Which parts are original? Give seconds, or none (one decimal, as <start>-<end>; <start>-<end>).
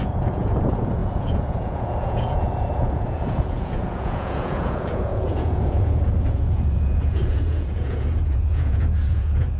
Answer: none